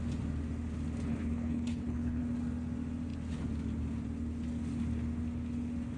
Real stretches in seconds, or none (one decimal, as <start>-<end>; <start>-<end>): 0.0-1.2; 2.2-6.0